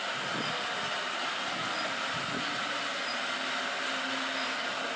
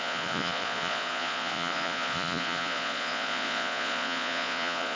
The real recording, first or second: first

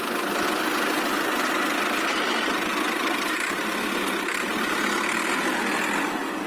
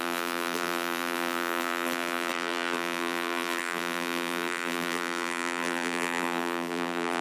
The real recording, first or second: first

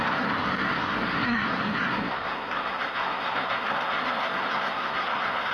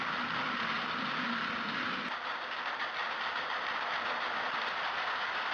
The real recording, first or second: second